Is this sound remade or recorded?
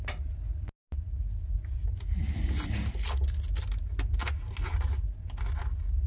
recorded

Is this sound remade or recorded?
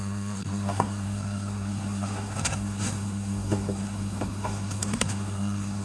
remade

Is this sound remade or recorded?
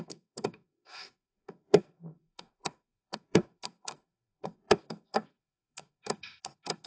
remade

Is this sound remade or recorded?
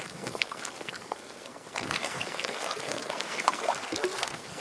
remade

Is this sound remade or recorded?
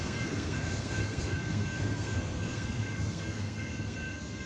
remade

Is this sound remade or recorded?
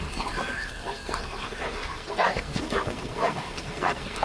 remade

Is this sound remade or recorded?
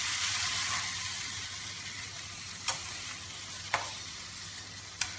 recorded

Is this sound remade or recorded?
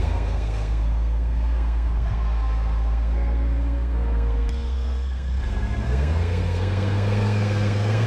remade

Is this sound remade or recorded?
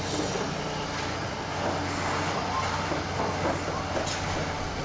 recorded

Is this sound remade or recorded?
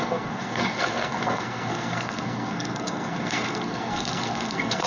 remade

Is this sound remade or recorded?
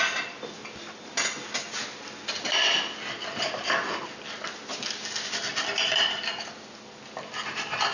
recorded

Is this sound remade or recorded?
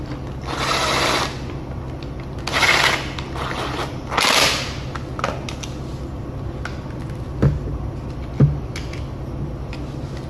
recorded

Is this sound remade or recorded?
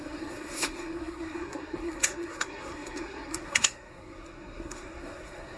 remade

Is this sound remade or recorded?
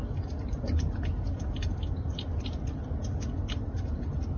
recorded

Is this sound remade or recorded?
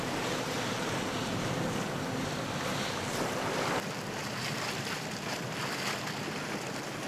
recorded